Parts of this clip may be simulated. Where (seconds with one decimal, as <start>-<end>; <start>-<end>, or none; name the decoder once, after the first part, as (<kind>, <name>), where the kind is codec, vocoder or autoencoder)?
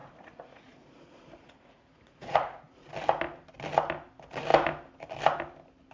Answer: 0.0-2.9 (vocoder, Vocos)